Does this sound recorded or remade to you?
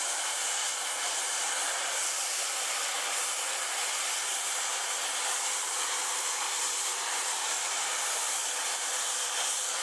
recorded